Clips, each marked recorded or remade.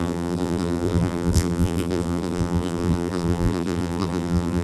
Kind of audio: remade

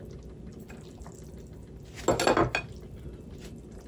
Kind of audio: recorded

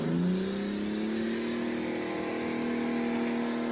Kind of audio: recorded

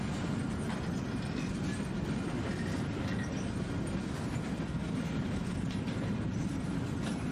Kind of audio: recorded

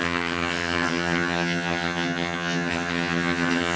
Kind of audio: remade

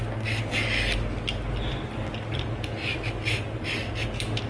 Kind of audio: recorded